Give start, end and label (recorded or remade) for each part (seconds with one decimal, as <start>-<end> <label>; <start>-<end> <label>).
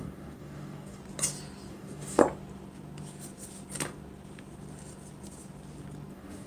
0.0-1.0 remade; 1.0-1.7 recorded; 1.7-2.2 remade; 2.2-6.1 recorded; 6.1-6.5 remade